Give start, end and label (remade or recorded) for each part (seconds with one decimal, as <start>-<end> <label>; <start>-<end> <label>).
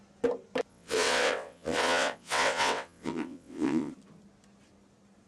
0.0-0.7 recorded; 0.7-3.9 remade; 3.9-5.3 recorded